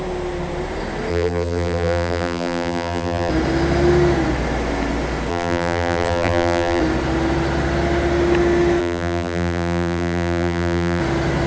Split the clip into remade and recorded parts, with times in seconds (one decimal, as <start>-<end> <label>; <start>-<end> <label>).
0.0-1.1 recorded; 1.1-3.3 remade; 3.3-5.3 recorded; 5.3-6.8 remade; 6.8-8.8 recorded; 8.8-11.0 remade; 11.0-11.5 recorded